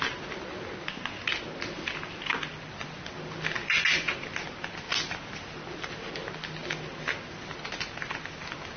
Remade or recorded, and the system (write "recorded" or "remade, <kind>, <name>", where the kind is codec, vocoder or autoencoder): recorded